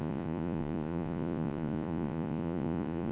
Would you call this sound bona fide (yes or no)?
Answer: no